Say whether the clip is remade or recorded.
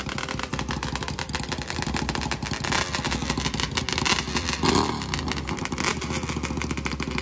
recorded